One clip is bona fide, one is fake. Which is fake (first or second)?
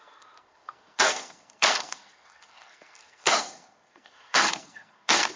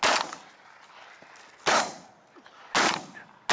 first